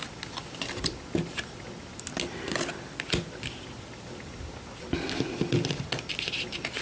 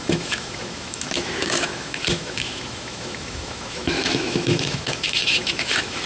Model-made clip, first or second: second